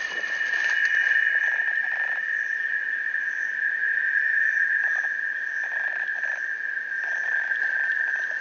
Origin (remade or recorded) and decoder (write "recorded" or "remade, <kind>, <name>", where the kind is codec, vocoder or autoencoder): recorded